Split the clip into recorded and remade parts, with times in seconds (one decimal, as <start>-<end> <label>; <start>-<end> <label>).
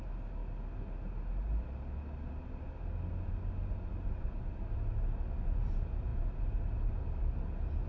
0.0-7.9 recorded